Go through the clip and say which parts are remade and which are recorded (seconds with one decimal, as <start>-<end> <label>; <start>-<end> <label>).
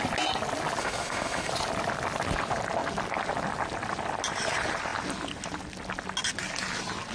0.0-0.8 recorded; 0.8-1.5 remade; 1.5-7.1 recorded